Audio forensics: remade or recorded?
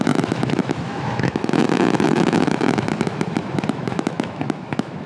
remade